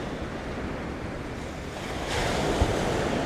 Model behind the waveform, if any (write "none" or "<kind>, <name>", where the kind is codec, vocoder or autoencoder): none